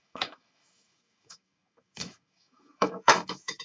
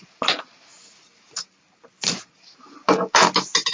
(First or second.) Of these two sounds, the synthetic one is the first